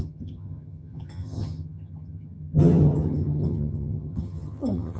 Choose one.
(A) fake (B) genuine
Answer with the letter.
A